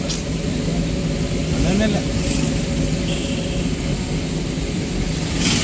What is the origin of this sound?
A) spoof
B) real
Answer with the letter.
B